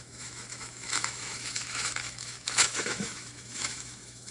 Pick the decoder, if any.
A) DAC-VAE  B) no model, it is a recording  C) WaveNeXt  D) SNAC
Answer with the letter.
A